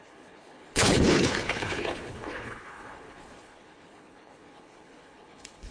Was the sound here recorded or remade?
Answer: remade